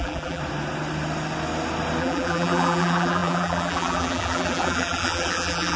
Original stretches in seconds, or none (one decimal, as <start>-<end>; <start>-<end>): 0.4-2.0